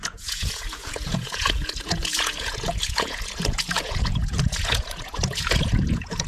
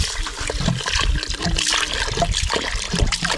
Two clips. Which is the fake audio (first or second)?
first